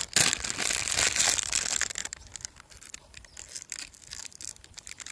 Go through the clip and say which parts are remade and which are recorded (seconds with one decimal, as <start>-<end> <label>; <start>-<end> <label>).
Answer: 0.0-5.1 recorded